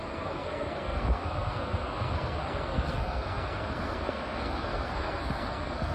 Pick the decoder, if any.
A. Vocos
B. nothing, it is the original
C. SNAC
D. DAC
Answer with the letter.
C